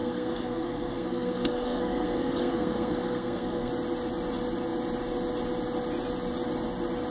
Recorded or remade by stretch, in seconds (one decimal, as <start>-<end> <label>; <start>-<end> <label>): 0.0-3.7 remade; 3.7-7.1 recorded